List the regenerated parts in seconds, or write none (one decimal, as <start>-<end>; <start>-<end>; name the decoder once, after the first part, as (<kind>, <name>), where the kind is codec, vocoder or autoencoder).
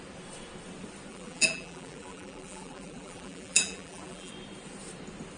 1.1-4.3 (vocoder, BigVGAN v2)